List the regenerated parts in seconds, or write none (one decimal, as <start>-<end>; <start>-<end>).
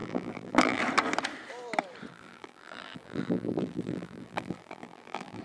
0.0-0.8; 2.1-5.4